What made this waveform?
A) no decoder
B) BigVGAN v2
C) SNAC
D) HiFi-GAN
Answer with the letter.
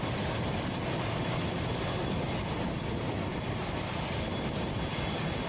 A